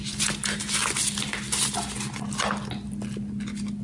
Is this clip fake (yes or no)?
no